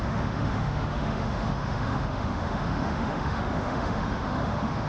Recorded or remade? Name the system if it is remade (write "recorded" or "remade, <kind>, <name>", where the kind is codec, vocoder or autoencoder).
remade, autoencoder, DAC-VAE